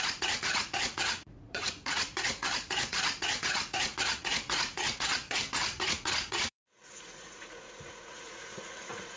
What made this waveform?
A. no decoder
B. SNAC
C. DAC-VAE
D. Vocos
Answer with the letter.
D